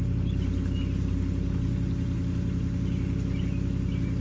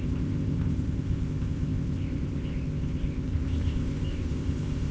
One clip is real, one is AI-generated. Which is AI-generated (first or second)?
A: second